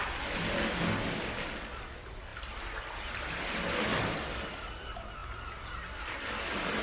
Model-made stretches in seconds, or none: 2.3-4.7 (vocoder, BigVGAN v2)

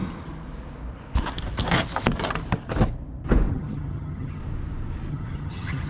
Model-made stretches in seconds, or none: 3.5-4.4 (vocoder, HiFi-GAN); 5.1-5.9

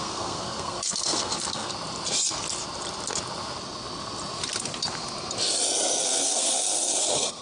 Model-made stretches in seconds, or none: 0.0-1.7 (codec, SNAC); 6.0-7.4

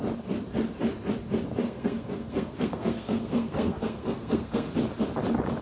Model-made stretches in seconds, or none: 1.6-4.7 (codec, SNAC)

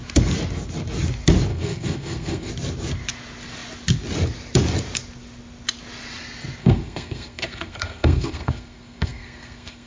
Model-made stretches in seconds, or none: 1.5-2.5 (codec, SNAC); 6.6-9.9